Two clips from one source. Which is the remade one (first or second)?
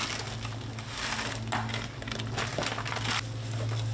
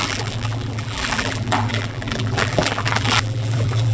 second